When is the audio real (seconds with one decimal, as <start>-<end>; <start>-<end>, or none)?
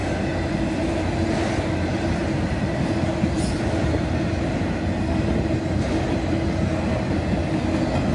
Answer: 0.0-8.1